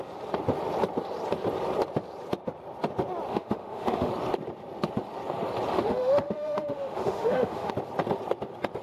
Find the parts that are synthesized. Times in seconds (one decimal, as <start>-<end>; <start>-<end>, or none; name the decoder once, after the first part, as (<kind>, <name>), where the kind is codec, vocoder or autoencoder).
3.3-4.1 (autoencoder, DAC-VAE); 5.7-7.7